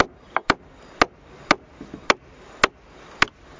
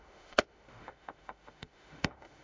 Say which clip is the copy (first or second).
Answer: second